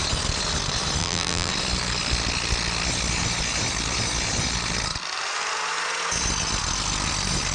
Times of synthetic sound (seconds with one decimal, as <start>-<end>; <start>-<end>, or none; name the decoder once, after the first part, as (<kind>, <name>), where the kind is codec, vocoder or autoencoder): 1.0-1.5 (vocoder, BigVGAN v2)